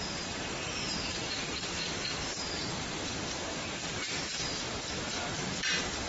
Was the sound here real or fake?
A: fake